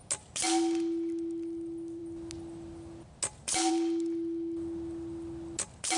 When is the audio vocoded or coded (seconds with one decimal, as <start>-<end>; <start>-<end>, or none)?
none